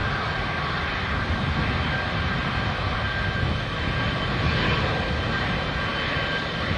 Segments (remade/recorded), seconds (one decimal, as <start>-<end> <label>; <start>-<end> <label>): 0.0-6.8 recorded